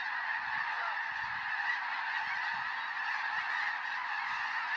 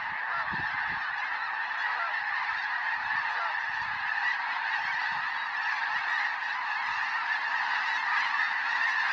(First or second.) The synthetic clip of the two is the first